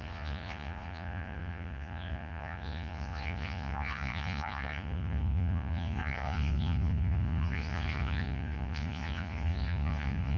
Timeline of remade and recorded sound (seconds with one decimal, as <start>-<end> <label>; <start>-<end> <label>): 0.0-10.4 remade